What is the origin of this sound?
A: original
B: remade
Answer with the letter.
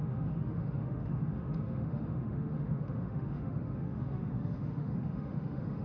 B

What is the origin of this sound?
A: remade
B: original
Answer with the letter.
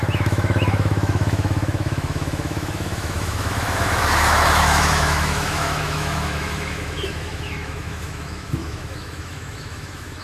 A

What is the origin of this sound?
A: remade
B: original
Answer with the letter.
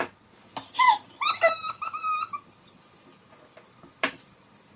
B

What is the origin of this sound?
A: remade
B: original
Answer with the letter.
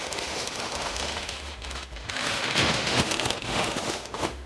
A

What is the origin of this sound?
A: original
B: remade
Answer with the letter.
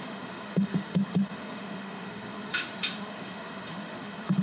B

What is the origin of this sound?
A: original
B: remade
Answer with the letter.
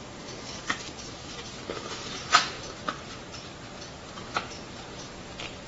A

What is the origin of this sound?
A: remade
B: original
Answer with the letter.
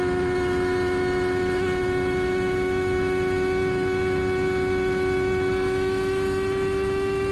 A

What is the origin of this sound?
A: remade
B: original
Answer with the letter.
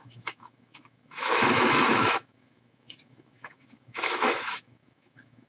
A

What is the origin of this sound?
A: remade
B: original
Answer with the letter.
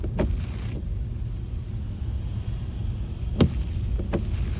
B